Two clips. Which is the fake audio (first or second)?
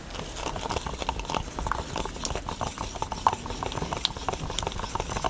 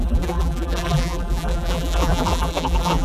second